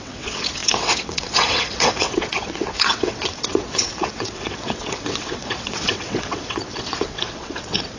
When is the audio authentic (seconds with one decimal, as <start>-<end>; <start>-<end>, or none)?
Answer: none